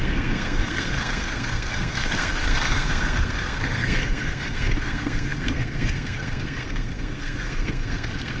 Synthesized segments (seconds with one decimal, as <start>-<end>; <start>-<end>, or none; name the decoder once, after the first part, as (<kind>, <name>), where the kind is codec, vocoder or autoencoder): 0.0-8.4 (codec, SNAC)